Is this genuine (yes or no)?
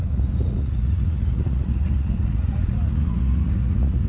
no